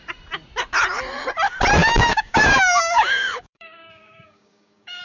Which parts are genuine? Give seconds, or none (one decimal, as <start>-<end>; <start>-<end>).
0.0-1.8